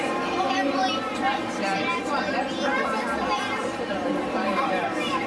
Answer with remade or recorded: recorded